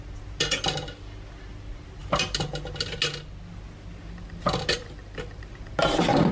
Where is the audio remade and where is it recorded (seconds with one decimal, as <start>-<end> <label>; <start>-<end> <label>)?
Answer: 0.0-6.3 recorded